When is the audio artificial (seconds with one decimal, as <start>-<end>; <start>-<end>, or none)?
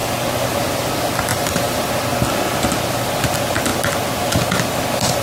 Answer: 1.3-1.9